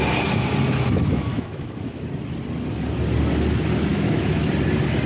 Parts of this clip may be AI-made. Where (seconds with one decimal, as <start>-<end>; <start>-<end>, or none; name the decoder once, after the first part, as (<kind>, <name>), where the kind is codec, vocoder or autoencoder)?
1.3-2.0 (autoencoder, DAC-VAE); 3.9-4.5